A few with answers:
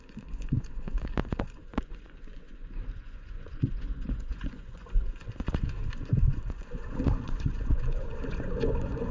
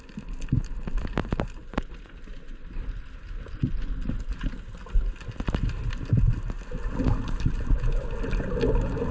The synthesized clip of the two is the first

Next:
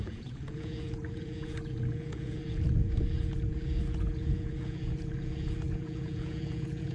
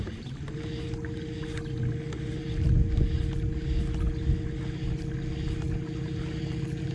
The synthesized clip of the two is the first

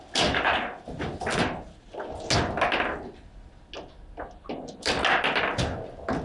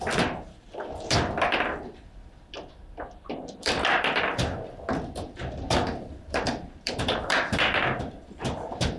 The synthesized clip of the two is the second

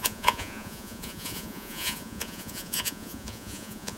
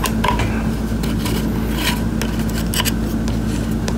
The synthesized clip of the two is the first